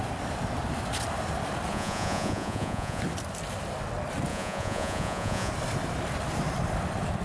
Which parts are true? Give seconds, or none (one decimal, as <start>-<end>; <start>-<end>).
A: 0.0-1.7; 3.0-4.3; 5.5-7.2